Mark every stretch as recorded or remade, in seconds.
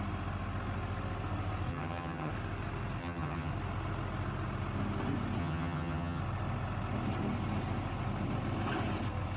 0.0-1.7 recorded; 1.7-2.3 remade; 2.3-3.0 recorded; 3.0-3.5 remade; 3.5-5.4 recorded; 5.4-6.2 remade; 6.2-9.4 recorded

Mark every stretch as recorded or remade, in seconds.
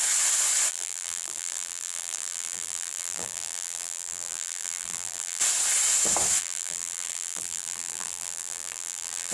0.0-0.7 recorded; 0.7-5.4 remade; 5.4-6.4 recorded; 6.4-9.3 remade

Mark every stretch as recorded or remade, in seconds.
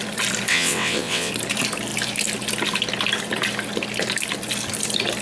0.0-0.5 recorded; 0.5-1.3 remade; 1.3-5.2 recorded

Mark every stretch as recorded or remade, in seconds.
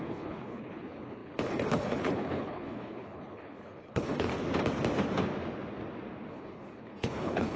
0.0-4.3 remade; 4.3-6.3 recorded; 6.3-7.6 remade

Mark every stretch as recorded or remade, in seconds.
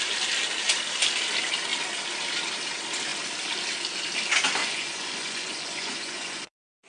0.0-4.6 recorded; 4.6-6.9 remade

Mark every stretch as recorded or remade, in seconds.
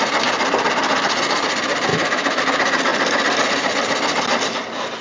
0.0-1.9 recorded; 1.9-2.4 remade; 2.4-5.0 recorded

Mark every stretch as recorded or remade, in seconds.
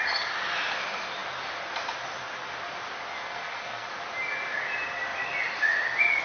0.0-3.2 recorded; 3.2-3.9 remade; 3.9-6.2 recorded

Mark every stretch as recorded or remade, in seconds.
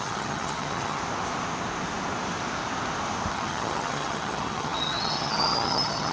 0.0-1.0 remade; 1.0-3.3 recorded; 3.3-6.1 remade